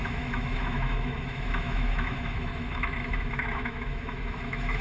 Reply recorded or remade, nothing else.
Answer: remade